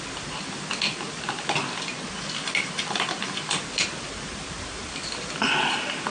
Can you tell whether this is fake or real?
real